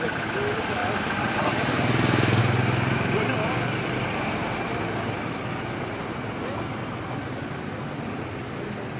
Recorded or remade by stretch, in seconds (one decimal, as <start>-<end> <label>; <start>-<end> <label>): 0.0-9.0 recorded